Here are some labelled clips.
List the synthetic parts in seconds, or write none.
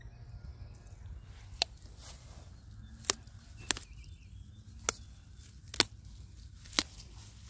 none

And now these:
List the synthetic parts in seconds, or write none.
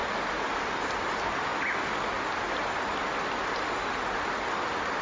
none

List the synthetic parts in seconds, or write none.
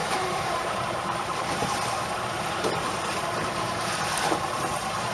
0.0-5.1 (vocoder, BigVGAN v2)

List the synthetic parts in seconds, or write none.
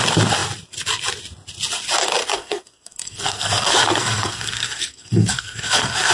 2.2-6.1 (codec, SNAC)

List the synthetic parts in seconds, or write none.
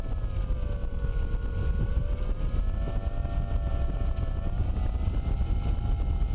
1.9-2.6 (vocoder, BigVGAN v2); 3.7-4.2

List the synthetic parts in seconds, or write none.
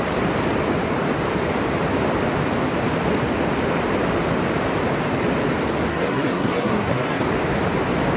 5.9-7.2 (codec, SNAC)